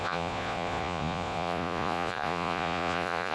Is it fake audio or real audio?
fake